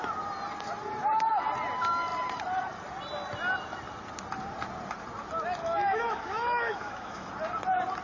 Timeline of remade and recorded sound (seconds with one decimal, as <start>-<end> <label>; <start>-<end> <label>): 0.0-5.6 recorded; 5.6-7.3 remade; 7.3-8.0 recorded